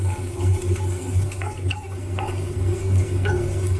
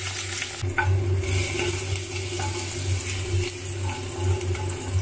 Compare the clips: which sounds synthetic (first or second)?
first